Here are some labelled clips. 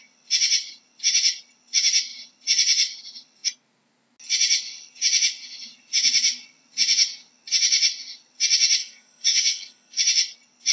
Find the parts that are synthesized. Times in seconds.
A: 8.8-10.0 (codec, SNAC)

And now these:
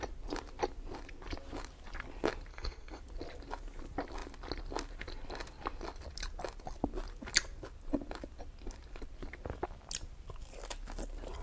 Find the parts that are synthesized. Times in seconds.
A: 2.5-3.0 (codec, SNAC)

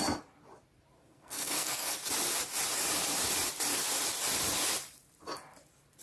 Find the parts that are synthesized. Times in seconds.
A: 1.0-2.1 (codec, SNAC)